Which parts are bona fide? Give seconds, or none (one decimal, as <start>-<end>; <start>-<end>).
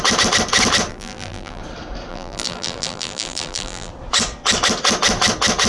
0.0-0.9; 1.6-2.1; 3.9-5.7